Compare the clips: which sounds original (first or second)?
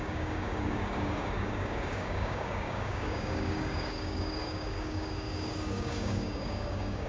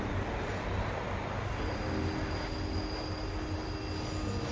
second